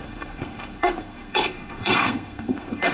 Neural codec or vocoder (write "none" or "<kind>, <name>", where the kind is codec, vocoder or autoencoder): codec, SNAC